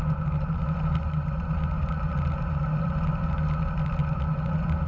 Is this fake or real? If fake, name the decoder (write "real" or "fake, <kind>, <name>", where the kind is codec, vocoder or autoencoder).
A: real